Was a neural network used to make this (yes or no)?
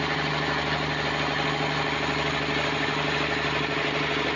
no